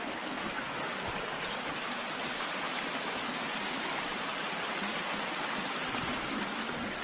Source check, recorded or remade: recorded